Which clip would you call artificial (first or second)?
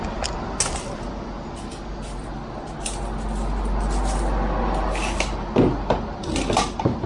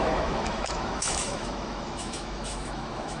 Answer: second